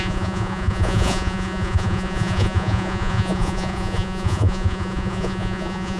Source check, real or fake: fake